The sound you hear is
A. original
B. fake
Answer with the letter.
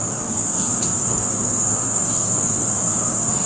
B